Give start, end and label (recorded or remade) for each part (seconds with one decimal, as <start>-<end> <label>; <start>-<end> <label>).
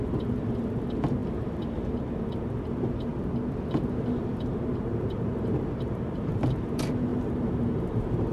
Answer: 0.0-3.1 remade; 3.1-4.2 recorded; 4.2-8.3 remade